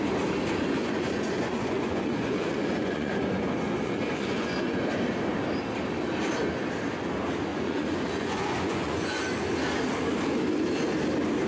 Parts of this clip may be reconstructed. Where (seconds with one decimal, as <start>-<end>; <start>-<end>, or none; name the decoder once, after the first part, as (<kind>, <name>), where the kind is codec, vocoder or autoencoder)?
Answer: 0.8-4.8 (vocoder, Vocos); 7.5-9.2